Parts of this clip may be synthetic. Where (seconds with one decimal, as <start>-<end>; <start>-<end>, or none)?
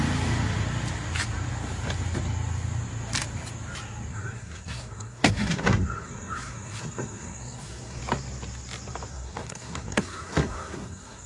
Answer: 4.1-8.0; 9.1-11.3